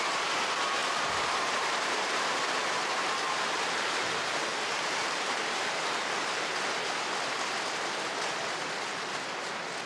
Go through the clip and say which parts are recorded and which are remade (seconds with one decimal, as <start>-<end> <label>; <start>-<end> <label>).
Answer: 0.0-0.8 recorded; 0.8-2.3 remade; 2.3-9.9 recorded